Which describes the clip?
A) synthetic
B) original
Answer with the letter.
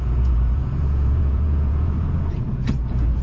A